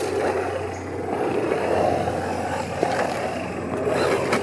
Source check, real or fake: real